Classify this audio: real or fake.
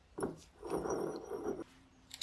fake